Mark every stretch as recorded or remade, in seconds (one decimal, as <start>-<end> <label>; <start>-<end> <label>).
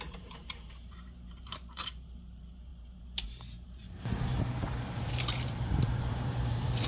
0.0-6.9 remade